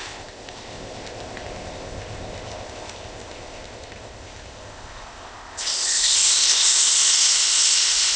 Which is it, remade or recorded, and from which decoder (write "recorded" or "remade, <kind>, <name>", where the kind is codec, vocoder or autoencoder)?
remade, codec, ZipCodec